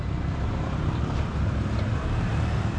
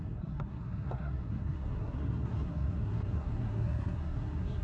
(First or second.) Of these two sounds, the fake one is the second